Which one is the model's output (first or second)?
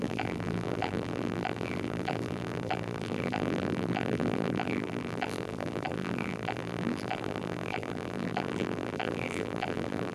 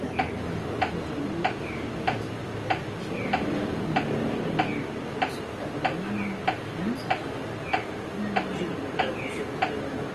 first